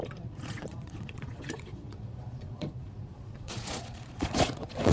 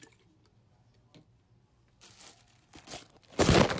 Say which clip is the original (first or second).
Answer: second